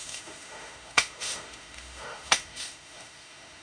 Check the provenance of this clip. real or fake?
fake